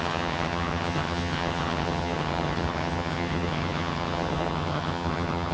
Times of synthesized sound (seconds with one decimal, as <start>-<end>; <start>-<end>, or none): 0.0-5.5